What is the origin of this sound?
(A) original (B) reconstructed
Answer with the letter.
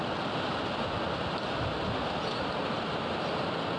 A